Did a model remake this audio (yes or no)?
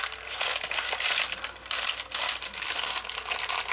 no